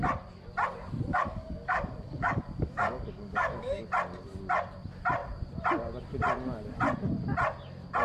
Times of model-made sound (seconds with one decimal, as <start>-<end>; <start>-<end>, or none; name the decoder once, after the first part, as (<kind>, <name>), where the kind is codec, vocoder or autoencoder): 1.1-3.8 (codec, DAC)